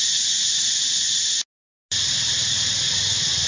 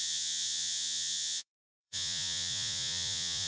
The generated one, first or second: second